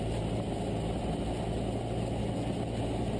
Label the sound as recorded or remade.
recorded